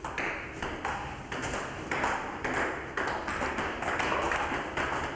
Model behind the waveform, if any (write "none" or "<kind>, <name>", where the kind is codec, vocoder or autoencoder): none